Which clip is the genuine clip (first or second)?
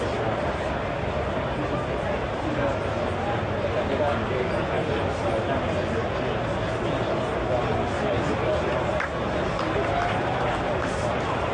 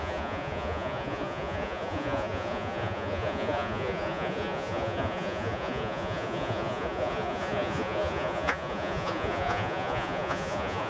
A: first